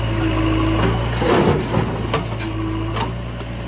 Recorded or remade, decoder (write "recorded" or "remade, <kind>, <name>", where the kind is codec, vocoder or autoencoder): recorded